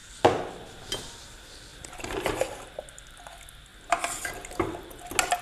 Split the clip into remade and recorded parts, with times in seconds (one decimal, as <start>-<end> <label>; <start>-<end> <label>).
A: 0.0-1.7 recorded; 1.7-2.8 remade; 2.8-5.4 recorded